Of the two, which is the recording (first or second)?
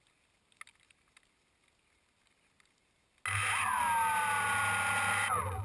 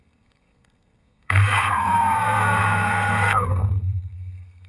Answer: first